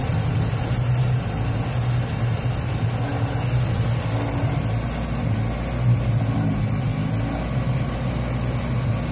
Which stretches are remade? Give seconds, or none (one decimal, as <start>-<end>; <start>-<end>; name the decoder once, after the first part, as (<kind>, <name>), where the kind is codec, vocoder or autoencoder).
none